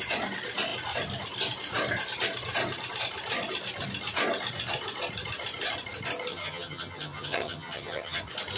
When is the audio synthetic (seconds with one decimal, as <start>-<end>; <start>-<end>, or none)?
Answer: 6.3-8.2